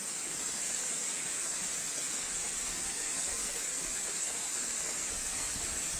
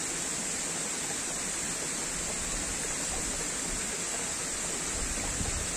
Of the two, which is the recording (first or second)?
second